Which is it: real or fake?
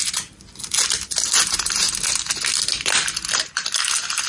real